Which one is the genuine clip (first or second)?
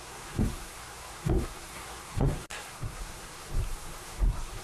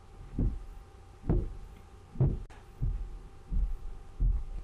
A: second